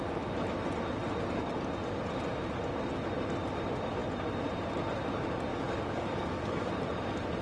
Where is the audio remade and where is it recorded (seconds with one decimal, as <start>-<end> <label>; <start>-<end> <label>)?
0.0-5.5 recorded; 5.5-6.7 remade; 6.7-7.4 recorded